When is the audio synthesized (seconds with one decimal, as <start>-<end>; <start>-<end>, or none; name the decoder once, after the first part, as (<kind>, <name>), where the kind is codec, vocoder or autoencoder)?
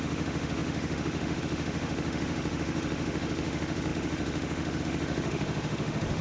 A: 0.0-6.2 (autoencoder, DAC-VAE)